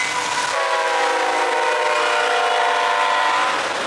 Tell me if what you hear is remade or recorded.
recorded